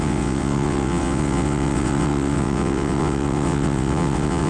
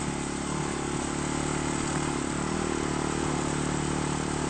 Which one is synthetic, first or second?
first